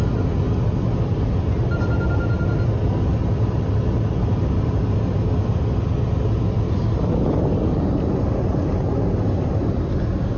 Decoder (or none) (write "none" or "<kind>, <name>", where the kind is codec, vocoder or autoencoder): none